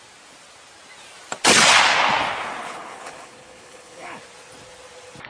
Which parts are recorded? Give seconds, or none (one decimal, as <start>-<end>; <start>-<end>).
0.0-2.6; 4.2-5.3